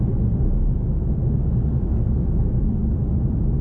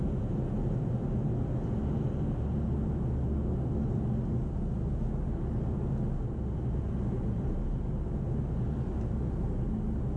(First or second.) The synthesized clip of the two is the first